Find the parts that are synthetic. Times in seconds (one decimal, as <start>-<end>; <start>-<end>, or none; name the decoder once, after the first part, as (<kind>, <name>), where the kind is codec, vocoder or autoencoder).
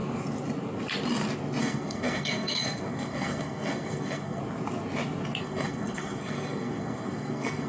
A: 1.6-4.4 (codec, SNAC); 5.4-7.7